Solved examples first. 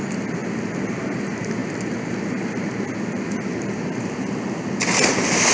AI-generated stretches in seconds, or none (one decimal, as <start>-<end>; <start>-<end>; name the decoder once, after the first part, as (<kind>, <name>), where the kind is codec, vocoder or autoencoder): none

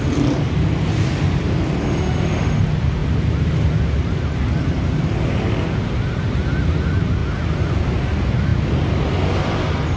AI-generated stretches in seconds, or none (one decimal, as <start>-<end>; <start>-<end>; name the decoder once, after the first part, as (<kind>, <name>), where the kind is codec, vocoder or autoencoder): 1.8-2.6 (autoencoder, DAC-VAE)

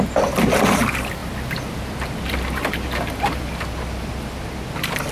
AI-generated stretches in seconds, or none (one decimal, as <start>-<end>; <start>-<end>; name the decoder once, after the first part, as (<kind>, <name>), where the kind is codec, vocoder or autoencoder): none

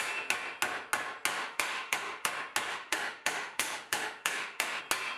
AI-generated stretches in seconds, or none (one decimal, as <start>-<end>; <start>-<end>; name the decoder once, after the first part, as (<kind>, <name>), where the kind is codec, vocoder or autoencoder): 1.3-2.3 (autoencoder, DAC-VAE); 2.7-4.8

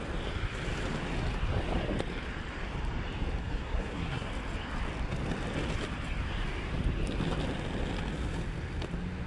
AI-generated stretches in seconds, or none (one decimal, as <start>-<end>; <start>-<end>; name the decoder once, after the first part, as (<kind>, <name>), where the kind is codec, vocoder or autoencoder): 3.4-4.3 (codec, SNAC)